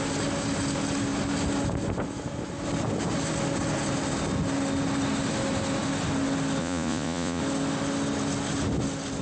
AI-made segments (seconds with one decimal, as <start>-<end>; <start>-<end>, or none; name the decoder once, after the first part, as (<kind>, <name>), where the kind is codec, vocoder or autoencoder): 6.6-7.4 (vocoder, Vocos)